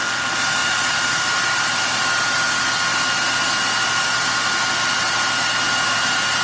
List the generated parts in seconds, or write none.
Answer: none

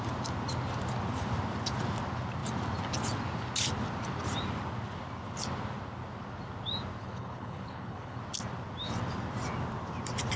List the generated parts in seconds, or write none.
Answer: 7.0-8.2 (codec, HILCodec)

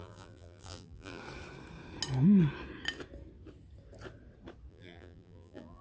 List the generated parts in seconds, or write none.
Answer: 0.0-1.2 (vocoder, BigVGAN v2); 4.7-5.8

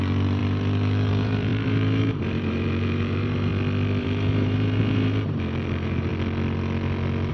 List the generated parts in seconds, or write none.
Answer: 0.0-3.5 (vocoder, BigVGAN v2); 4.0-6.1